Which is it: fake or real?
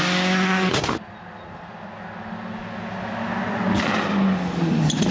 real